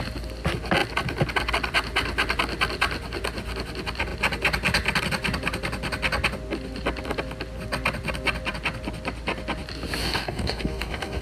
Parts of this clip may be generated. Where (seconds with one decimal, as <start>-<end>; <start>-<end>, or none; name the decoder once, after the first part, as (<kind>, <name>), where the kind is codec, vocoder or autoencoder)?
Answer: 10.0-11.2 (codec, DAC)